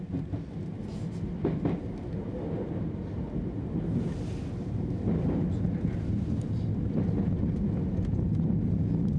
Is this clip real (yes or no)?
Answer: yes